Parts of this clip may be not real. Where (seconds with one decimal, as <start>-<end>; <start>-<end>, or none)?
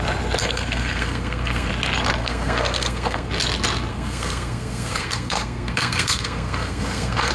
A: 0.4-1.7; 2.2-3.3; 3.9-7.3